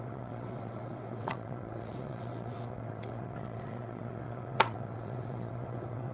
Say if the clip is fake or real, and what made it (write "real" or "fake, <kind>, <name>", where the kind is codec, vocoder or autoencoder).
fake, vocoder, WaveNeXt